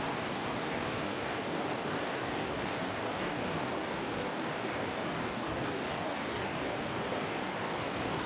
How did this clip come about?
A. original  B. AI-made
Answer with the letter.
B